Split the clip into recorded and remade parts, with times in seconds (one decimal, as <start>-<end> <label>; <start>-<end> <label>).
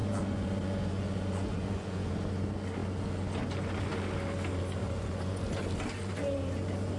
0.0-2.1 remade; 2.1-4.8 recorded; 4.8-5.4 remade; 5.4-7.0 recorded